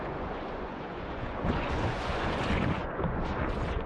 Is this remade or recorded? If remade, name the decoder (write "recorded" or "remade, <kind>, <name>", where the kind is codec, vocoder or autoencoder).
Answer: remade, vocoder, Vocos